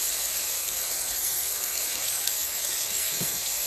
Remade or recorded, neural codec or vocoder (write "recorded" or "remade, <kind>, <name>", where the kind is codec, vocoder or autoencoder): remade, codec, SNAC